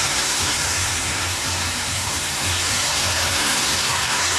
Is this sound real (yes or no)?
no